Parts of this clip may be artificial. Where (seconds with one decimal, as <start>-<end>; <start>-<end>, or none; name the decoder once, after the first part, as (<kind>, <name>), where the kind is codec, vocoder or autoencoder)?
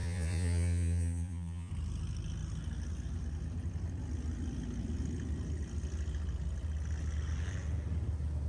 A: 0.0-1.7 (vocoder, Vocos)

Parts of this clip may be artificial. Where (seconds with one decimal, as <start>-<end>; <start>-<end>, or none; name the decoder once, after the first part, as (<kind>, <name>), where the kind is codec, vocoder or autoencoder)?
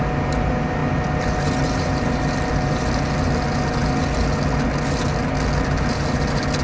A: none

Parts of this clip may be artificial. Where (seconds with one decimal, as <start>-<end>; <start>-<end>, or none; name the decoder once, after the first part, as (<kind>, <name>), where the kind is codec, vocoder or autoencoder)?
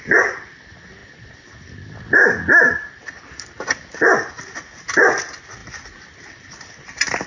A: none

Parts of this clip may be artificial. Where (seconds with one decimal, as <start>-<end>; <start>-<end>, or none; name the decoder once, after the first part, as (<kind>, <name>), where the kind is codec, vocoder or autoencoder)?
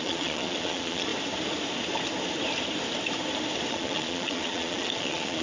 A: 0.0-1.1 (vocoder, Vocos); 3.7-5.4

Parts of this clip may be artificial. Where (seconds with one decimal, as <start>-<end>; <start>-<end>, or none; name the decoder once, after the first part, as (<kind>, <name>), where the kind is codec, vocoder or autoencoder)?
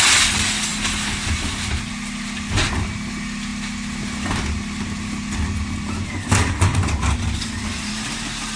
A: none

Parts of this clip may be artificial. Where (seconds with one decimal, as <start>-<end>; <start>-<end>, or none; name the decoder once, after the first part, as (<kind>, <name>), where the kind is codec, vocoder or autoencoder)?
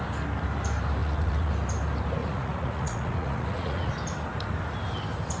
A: 1.0-1.5 (vocoder, Vocos); 2.2-3.9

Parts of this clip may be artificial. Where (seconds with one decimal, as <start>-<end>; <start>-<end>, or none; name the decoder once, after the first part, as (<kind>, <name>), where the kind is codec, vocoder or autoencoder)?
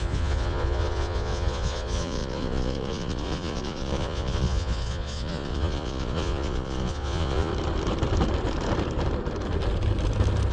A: 0.0-7.5 (vocoder, Vocos)